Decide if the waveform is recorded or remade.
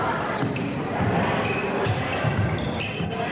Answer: recorded